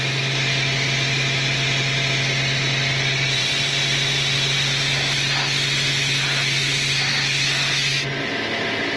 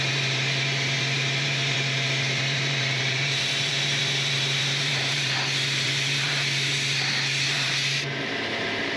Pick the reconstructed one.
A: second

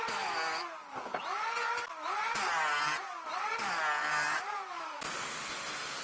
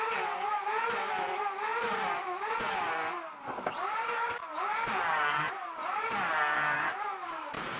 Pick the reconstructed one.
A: second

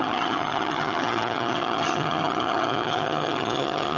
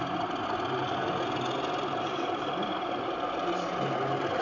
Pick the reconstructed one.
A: first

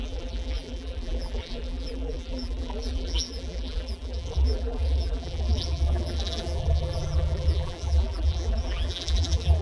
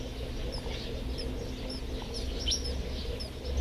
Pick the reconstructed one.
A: first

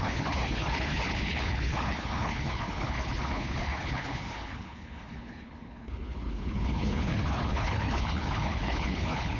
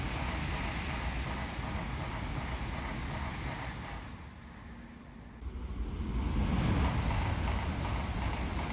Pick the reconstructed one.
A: first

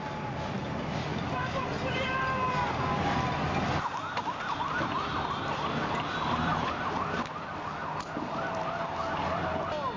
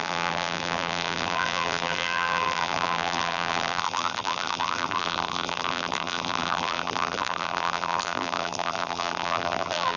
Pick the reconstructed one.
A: second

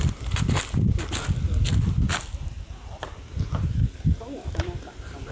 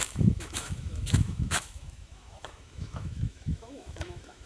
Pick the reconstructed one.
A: second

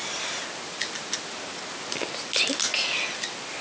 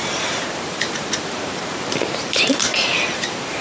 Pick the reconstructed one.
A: second